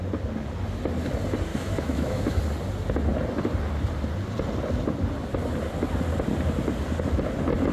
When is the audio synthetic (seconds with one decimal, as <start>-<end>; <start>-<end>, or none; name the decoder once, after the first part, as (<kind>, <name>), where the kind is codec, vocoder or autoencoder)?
1.5-2.4 (autoencoder, DAC-VAE)